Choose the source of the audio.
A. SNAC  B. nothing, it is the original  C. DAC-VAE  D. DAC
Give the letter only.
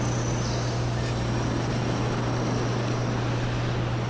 B